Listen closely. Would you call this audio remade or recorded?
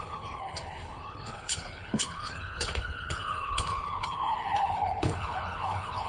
remade